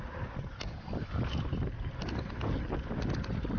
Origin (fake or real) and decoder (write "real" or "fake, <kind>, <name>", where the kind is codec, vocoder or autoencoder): real